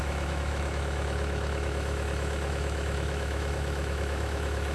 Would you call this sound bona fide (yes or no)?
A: no